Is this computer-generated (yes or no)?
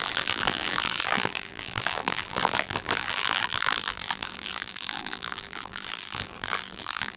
yes